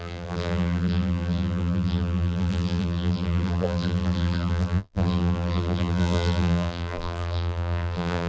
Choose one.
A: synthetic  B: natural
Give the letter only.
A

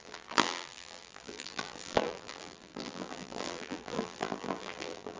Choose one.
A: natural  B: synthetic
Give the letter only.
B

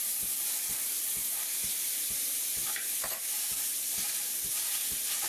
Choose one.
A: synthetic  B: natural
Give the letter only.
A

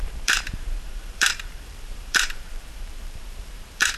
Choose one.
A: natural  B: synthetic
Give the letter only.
B